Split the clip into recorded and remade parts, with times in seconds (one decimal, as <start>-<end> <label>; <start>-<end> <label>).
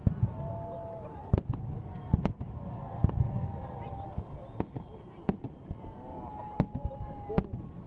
0.0-7.9 recorded